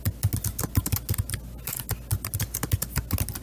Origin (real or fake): real